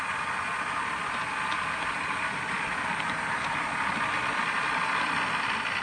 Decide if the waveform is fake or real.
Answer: real